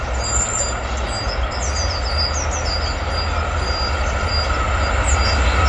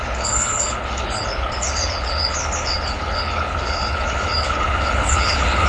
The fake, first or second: second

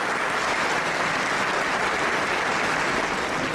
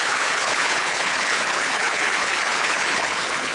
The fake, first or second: second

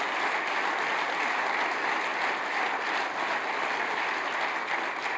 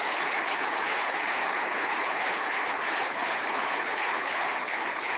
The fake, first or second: second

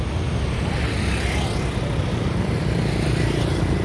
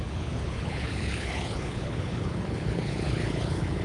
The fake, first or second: second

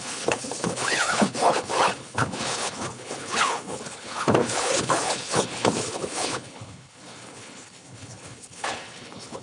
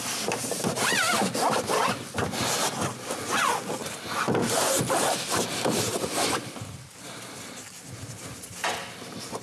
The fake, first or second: first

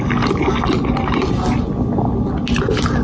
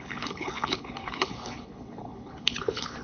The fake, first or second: second